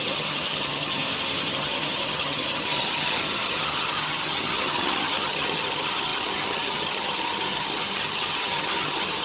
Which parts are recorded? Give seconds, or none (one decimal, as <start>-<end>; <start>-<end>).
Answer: 1.0-1.5